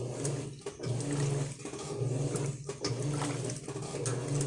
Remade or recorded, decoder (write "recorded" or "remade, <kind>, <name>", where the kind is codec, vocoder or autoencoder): recorded